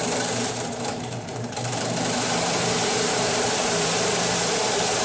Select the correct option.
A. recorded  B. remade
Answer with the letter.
B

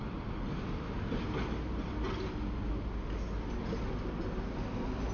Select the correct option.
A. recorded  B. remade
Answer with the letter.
A